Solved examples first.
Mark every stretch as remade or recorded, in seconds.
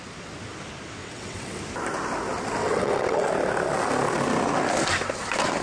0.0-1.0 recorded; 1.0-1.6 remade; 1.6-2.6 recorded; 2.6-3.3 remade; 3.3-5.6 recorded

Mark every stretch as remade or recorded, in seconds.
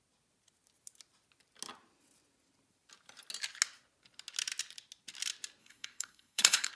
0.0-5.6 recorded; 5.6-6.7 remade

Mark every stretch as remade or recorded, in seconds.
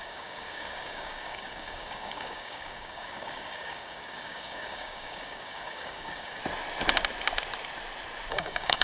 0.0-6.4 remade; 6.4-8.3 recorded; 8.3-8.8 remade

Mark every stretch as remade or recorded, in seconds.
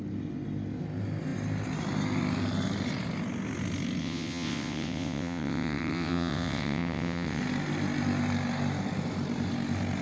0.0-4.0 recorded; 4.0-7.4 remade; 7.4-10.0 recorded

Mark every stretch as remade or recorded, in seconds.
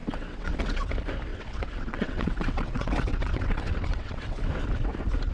0.0-0.9 remade; 0.9-1.3 recorded; 1.3-4.5 remade; 4.5-5.3 recorded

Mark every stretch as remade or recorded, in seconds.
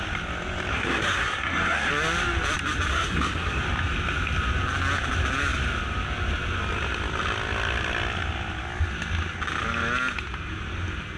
0.0-0.7 recorded; 0.7-1.9 remade; 1.9-2.9 recorded; 2.9-3.6 remade; 3.6-11.2 recorded